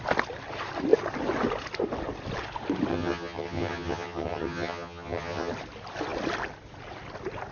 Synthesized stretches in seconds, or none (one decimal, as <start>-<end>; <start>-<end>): 2.9-5.5